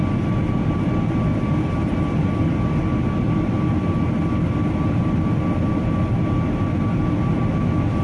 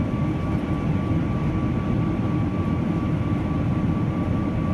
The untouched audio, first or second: first